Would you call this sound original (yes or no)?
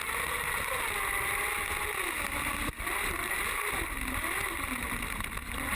yes